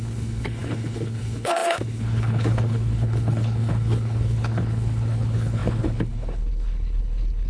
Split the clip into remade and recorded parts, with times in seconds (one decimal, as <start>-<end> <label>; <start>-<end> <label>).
0.0-7.5 remade